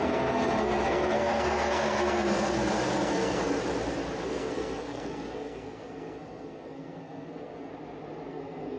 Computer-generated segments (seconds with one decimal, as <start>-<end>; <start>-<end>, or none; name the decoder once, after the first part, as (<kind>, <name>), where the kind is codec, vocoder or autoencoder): 0.0-3.6 (codec, SNAC); 4.2-7.7; 8.3-8.8